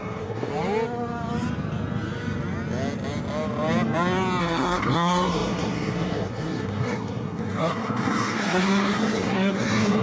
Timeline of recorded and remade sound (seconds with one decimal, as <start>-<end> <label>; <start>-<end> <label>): 0.0-0.5 remade; 0.5-4.4 recorded; 4.4-10.0 remade